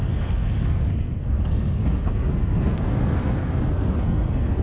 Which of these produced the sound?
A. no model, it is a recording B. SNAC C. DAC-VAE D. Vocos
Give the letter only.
B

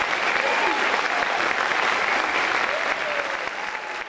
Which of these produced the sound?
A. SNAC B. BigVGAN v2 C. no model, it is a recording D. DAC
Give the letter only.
C